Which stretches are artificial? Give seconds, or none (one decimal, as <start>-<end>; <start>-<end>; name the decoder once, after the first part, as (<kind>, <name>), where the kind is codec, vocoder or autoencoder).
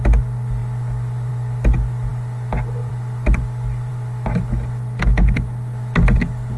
none